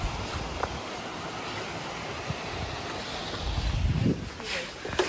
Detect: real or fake real